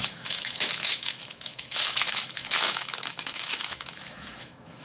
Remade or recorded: remade